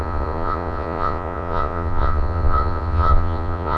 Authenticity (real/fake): fake